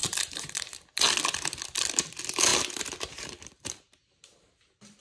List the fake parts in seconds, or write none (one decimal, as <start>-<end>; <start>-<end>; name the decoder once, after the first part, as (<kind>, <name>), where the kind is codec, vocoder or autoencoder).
0.0-0.6 (vocoder, BigVGAN v2); 2.5-4.4